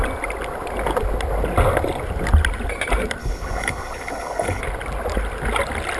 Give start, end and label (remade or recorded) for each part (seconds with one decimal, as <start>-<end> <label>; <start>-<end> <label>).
0.0-3.2 recorded; 3.2-4.6 remade; 4.6-6.0 recorded

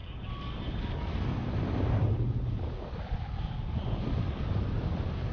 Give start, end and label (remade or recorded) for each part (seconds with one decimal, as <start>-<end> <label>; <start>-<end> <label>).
0.0-5.3 recorded

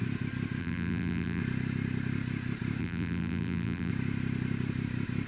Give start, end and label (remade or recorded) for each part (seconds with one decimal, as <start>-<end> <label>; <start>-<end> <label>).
0.0-0.6 recorded; 0.6-1.4 remade; 1.4-2.8 recorded; 2.8-3.9 remade; 3.9-5.3 recorded